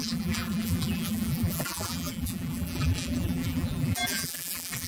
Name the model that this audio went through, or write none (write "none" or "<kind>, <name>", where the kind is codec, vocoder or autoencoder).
vocoder, BigVGAN v2